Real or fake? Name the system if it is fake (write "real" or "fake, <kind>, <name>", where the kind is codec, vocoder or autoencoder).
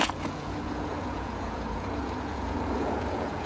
fake, vocoder, Vocos